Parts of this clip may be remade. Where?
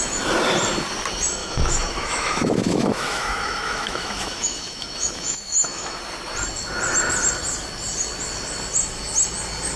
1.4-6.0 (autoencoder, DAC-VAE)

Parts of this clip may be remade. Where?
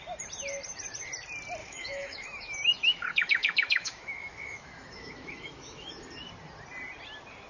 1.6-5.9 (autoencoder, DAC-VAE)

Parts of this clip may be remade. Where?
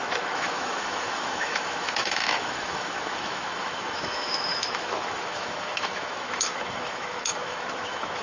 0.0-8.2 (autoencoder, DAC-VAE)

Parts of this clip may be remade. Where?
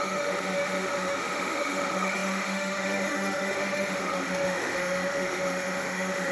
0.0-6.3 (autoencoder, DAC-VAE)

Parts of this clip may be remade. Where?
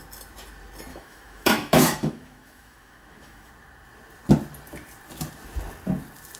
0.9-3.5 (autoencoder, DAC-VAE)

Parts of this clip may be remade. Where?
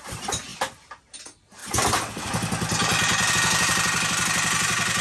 none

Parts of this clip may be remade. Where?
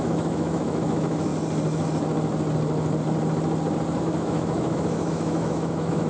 0.0-1.3 (autoencoder, DAC-VAE); 4.0-6.1